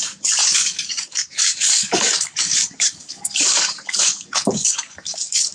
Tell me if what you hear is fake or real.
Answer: fake